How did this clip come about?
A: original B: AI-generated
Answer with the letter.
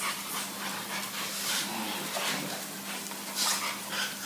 A